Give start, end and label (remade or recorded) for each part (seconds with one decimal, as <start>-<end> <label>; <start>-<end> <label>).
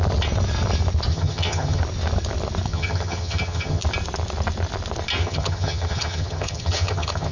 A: 0.0-1.1 recorded; 1.1-1.8 remade; 1.8-2.7 recorded; 2.7-3.8 remade; 3.8-5.2 recorded; 5.2-7.3 remade